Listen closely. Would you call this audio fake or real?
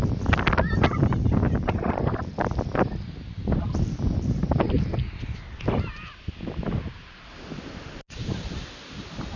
real